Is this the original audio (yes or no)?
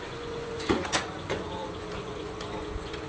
no